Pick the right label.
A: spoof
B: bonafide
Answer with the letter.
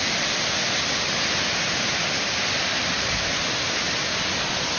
B